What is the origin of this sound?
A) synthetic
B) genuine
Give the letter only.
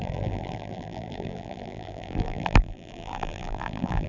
A